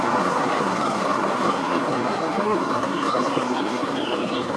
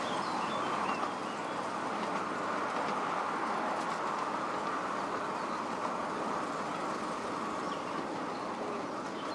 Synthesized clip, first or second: first